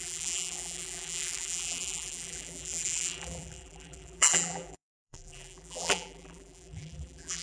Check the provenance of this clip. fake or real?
fake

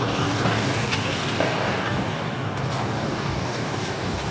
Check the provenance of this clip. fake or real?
fake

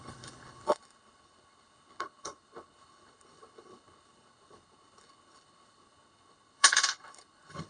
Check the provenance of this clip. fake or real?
fake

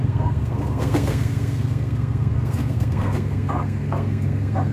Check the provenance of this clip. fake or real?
fake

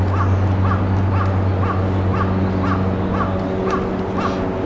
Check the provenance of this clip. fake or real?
real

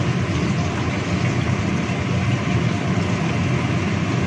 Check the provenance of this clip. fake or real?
real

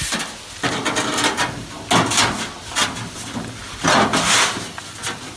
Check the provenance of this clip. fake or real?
real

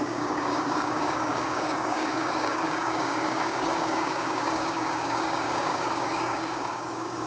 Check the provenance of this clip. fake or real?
fake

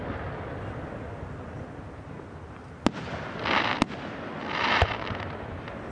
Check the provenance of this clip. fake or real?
real